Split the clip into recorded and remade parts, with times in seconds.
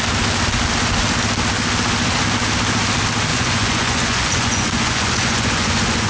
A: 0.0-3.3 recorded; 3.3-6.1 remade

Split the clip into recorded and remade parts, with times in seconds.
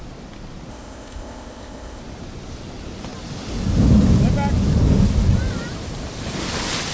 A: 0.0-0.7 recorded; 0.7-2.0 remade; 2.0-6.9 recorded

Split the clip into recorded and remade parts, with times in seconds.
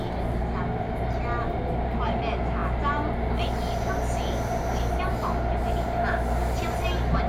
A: 0.0-7.3 recorded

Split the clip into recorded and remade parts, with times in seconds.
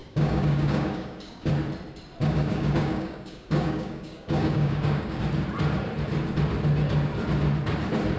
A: 0.0-1.5 remade; 1.5-2.2 recorded; 2.2-5.2 remade; 5.2-8.2 recorded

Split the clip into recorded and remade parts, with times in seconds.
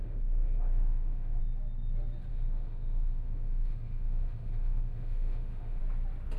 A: 0.0-1.4 remade; 1.4-2.3 recorded; 2.3-5.8 remade; 5.8-6.4 recorded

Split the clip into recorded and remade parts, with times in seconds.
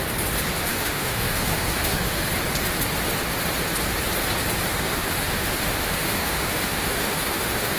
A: 0.0-0.7 recorded; 0.7-2.3 remade; 2.3-4.7 recorded; 4.7-7.8 remade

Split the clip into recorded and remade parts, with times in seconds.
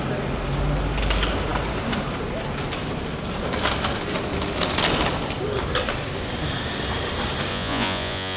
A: 0.0-7.5 recorded; 7.5-8.4 remade